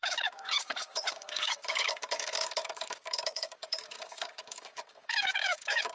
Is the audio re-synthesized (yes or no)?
yes